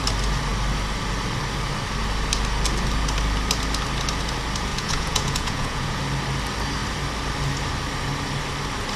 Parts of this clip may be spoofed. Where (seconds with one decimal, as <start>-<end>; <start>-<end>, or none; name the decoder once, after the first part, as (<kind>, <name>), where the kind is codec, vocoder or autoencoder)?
4.7-6.0 (vocoder, Vocos)